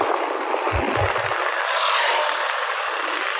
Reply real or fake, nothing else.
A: real